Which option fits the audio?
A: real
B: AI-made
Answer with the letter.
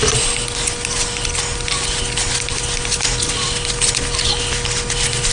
A